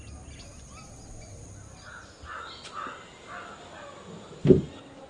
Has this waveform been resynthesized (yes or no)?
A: no